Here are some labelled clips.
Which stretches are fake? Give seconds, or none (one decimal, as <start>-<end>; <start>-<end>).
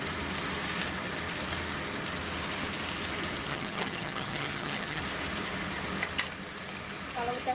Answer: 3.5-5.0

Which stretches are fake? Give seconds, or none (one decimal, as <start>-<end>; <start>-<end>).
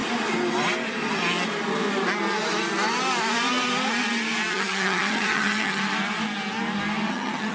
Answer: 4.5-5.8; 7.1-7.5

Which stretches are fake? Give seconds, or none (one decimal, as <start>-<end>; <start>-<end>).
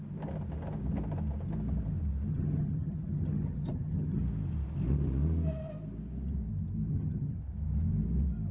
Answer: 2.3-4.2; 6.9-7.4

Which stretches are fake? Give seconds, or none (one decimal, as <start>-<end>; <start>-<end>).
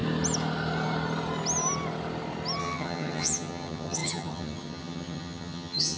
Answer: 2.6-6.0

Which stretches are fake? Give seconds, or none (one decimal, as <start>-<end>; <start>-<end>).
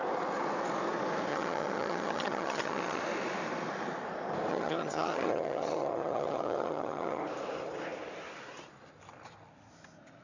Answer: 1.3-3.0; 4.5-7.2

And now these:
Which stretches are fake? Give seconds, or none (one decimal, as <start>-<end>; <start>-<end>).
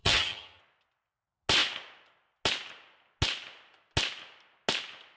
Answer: 0.0-0.6